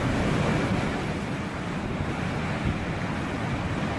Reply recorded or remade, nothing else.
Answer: recorded